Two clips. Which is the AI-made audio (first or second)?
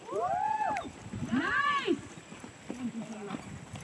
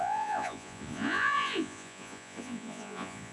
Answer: second